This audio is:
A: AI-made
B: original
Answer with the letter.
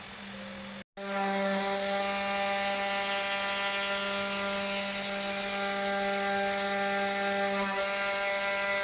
B